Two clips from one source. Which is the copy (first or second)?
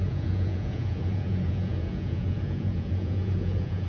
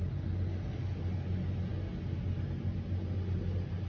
first